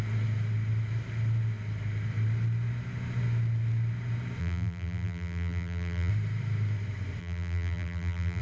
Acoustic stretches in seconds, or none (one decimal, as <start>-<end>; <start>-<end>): 0.0-4.4; 6.1-7.2

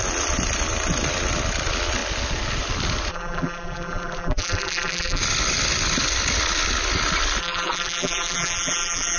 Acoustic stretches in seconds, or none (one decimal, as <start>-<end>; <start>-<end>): 0.0-3.1; 5.2-7.4

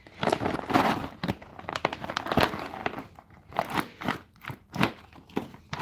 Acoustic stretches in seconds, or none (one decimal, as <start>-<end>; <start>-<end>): 0.0-1.5; 2.1-2.8

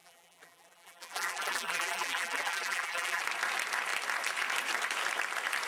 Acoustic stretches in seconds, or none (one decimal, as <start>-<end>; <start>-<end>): 3.2-5.7

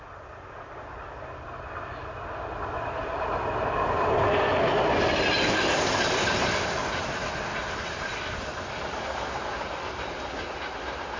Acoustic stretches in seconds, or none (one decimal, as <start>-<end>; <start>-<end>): 0.0-7.5; 8.3-11.2

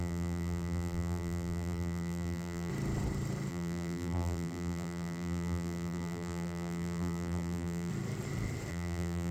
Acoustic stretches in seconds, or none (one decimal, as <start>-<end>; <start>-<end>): 2.7-3.5; 7.9-8.7

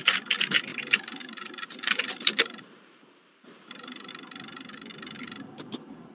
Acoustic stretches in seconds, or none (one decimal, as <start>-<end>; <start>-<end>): 0.0-0.7; 4.1-6.1